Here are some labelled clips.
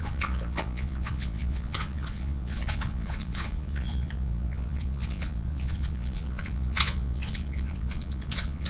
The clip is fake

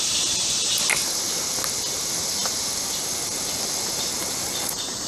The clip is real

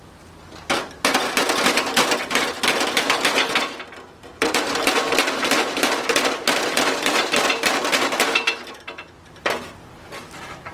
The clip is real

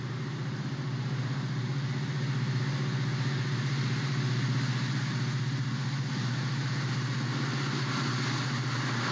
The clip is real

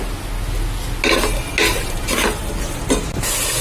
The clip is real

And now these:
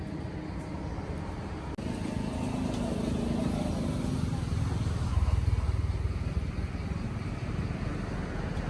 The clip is real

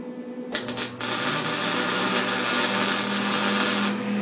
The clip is real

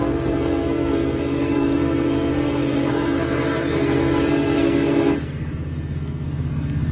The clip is fake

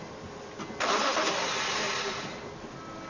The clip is real